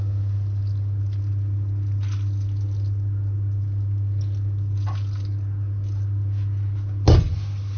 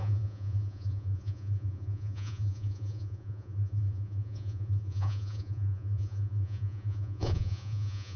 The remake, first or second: second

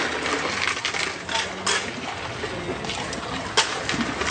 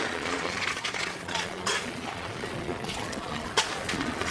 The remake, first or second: second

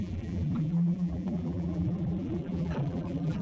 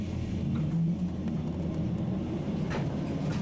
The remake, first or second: first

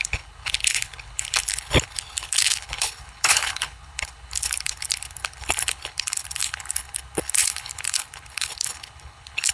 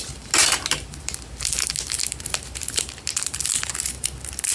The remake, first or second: first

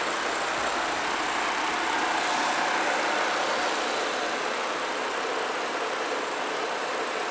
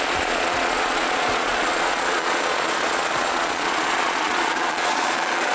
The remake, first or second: second